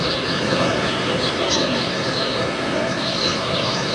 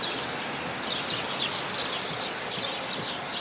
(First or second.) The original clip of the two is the second